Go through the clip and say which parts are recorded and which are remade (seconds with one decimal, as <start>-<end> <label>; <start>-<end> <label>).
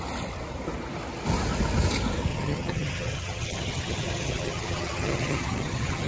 0.0-2.3 recorded; 2.3-6.1 remade